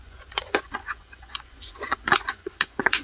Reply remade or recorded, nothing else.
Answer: remade